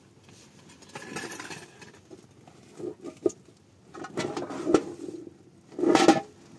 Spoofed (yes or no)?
no